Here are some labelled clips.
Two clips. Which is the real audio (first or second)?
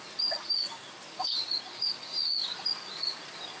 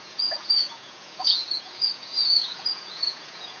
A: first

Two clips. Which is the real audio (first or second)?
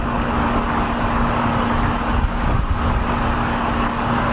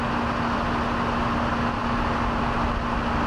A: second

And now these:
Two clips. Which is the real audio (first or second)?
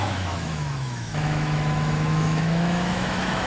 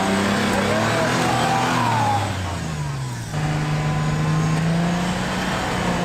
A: second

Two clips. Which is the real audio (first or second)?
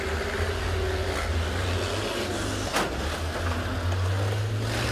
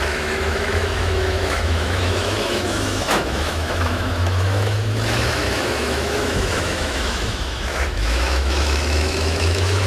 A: first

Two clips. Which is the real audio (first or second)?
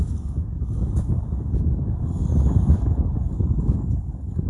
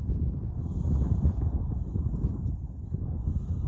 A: second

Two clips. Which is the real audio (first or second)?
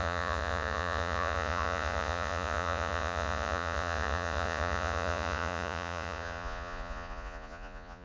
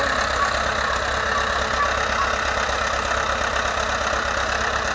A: second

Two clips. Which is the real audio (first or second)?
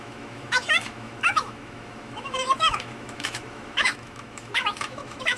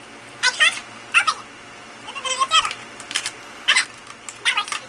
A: second